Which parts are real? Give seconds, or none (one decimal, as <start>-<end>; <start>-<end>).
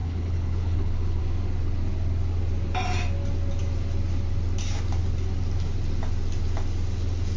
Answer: 1.2-7.4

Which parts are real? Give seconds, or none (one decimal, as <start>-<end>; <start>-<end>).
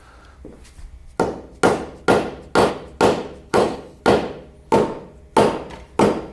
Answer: 0.0-3.5; 4.0-6.3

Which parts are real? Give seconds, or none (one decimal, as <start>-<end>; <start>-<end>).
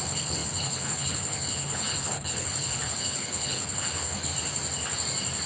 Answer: 4.3-5.5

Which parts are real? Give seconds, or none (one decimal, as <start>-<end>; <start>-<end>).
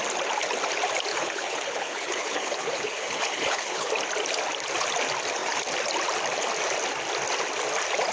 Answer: 0.0-1.1; 3.9-8.1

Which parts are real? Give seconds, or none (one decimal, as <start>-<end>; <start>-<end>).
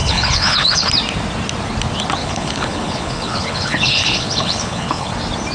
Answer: 0.9-2.2; 5.1-5.5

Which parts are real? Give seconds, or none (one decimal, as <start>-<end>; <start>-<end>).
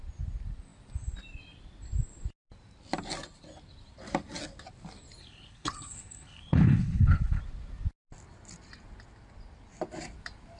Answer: 0.0-5.2; 7.4-10.6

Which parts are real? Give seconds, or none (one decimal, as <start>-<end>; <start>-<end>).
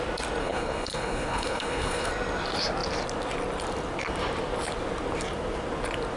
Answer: 0.0-0.4; 2.1-6.2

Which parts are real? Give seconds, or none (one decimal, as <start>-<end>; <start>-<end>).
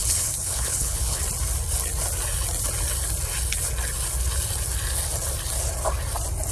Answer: 1.2-6.5